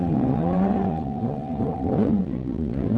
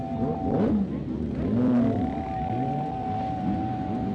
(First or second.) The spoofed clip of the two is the first